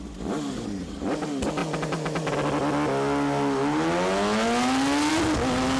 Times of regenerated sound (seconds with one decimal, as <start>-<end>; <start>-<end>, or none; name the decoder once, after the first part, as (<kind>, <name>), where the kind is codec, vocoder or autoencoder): none